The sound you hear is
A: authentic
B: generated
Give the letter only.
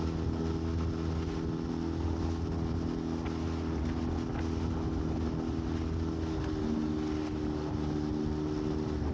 A